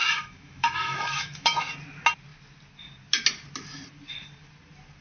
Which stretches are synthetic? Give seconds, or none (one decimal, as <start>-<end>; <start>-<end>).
0.0-1.7